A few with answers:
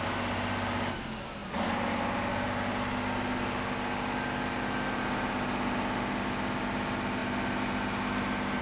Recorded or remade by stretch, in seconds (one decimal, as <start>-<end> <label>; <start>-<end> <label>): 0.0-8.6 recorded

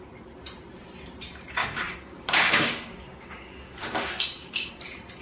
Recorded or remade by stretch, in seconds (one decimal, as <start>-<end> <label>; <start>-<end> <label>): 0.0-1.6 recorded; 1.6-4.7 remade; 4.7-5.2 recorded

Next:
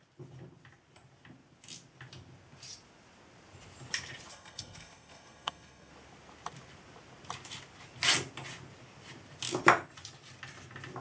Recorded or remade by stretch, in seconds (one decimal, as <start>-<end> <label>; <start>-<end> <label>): 0.0-4.3 recorded; 4.3-5.9 remade; 5.9-11.0 recorded